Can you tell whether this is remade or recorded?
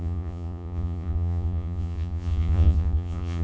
remade